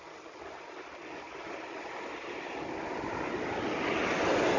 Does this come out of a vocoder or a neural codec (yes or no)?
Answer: no